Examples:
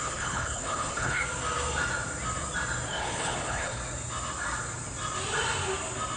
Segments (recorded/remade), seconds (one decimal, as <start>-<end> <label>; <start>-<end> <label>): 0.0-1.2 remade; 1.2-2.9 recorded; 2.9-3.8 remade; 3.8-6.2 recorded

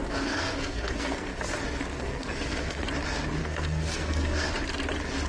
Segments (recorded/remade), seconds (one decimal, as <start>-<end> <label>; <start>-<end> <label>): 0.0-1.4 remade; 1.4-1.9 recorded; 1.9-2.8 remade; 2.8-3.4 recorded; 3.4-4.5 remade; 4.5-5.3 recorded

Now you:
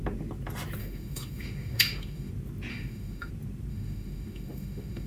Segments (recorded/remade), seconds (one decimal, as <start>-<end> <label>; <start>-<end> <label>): 0.0-0.8 recorded; 0.8-2.3 remade; 2.3-2.7 recorded; 2.7-3.3 remade; 3.3-3.7 recorded; 3.7-5.1 remade

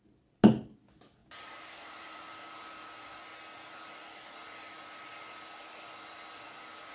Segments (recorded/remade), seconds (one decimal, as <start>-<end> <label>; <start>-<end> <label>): 0.0-1.2 recorded; 1.2-3.2 remade; 3.2-6.9 recorded